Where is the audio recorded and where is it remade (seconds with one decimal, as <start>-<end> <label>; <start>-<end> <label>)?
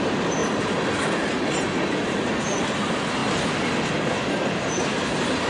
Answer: 0.0-5.5 recorded